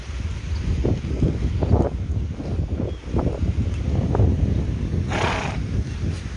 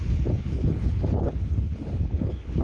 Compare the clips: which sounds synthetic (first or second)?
second